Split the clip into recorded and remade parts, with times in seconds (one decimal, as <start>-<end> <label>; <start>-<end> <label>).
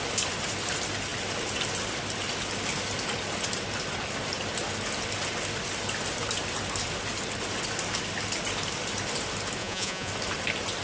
0.0-9.6 recorded; 9.6-10.1 remade; 10.1-10.8 recorded